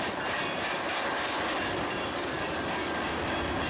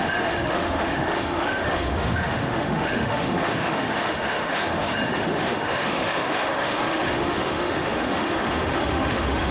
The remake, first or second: second